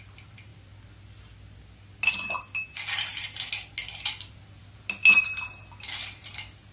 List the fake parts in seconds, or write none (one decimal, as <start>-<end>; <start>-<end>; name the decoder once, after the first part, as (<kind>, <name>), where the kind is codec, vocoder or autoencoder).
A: none